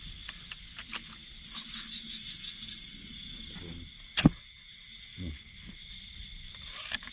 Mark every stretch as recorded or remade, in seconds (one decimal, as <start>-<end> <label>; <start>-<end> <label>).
0.0-5.1 recorded; 5.1-7.1 remade